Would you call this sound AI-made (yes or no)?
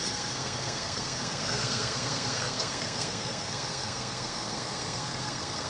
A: yes